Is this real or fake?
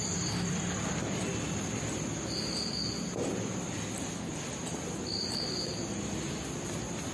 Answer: real